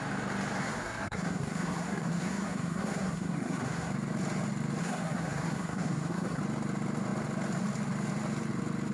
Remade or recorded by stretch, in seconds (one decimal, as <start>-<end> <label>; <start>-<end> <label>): 0.0-0.6 recorded; 0.6-3.9 remade; 3.9-4.8 recorded; 4.8-6.4 remade; 6.4-8.9 recorded